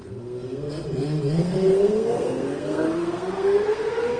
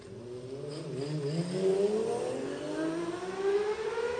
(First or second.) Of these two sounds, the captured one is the second